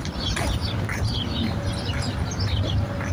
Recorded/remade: recorded